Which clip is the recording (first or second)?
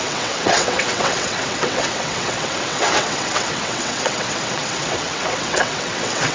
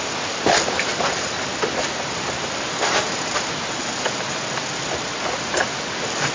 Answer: second